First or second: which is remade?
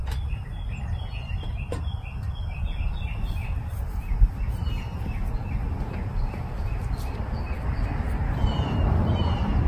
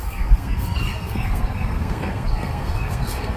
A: second